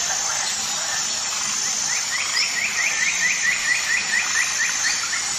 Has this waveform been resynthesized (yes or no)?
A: no